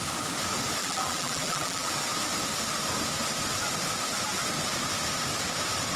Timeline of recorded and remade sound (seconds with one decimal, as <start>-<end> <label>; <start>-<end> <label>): 0.0-0.8 recorded; 0.8-1.9 remade; 1.9-6.0 recorded